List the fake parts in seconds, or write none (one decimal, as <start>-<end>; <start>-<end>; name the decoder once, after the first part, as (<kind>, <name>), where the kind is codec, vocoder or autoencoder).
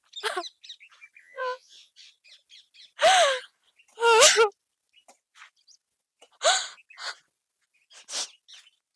1.2-1.9 (vocoder, Vocos)